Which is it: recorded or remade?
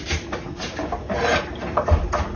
recorded